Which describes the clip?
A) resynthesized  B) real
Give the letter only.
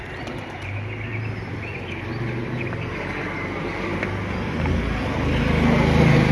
B